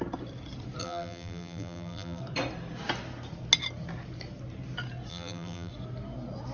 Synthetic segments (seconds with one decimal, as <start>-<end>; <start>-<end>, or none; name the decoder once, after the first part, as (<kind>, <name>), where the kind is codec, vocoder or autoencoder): 0.8-2.2 (vocoder, BigVGAN v2); 5.1-5.7